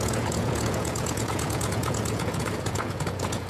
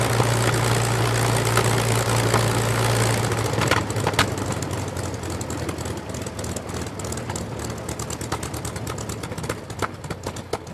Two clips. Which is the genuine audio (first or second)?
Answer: second